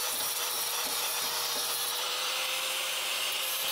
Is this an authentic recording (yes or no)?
no